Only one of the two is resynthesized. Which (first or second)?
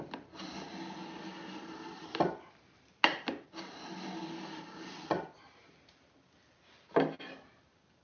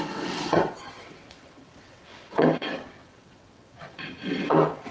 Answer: second